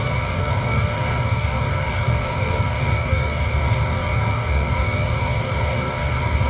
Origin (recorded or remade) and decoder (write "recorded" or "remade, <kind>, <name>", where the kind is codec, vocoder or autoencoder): remade, codec, DAC